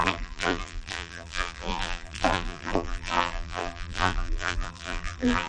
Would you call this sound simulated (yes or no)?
yes